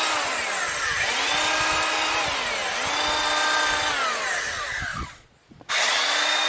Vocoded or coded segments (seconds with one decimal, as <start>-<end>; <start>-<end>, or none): 4.9-5.7